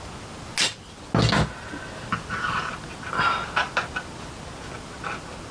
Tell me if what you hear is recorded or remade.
recorded